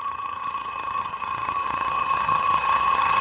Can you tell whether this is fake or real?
fake